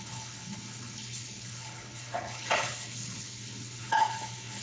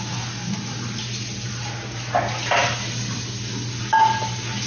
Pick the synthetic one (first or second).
first